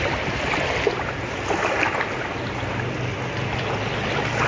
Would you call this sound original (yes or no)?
yes